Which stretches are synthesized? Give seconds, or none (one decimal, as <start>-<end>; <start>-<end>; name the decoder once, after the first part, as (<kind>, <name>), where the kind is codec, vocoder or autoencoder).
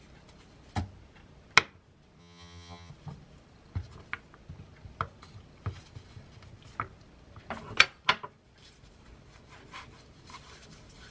2.2-2.9 (vocoder, HiFi-GAN)